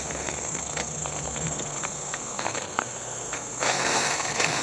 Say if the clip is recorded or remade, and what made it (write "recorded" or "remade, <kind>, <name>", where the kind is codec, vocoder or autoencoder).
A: remade, codec, SNAC